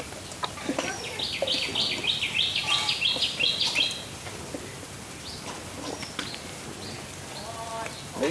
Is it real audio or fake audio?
real